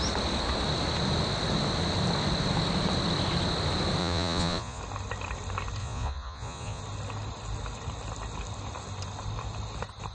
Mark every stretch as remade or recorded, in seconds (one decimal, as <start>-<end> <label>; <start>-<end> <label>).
0.0-4.0 recorded; 4.0-4.8 remade; 4.8-5.8 recorded; 5.8-6.8 remade; 6.8-10.1 recorded